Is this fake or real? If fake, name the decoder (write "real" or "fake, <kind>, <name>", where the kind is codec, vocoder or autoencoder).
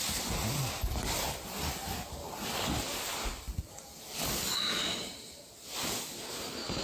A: real